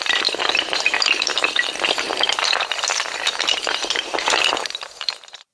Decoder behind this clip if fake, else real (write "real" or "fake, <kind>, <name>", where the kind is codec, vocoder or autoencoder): fake, vocoder, BigVGAN v2